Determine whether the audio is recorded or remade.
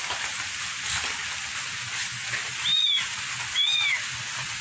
recorded